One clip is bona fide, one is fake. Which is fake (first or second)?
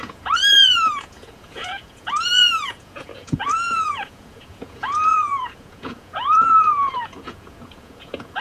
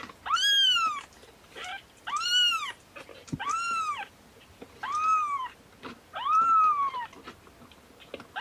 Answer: first